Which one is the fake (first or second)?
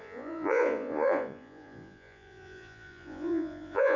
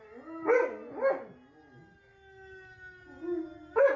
first